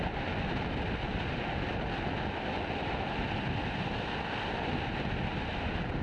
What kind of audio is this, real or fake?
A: real